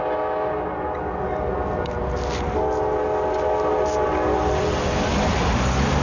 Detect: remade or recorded recorded